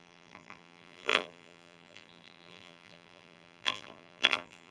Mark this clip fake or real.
fake